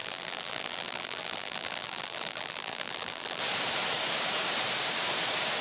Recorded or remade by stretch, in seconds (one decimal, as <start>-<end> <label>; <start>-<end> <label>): 0.0-3.4 remade; 3.4-5.6 recorded